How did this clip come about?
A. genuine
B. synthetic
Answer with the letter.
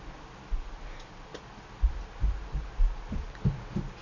A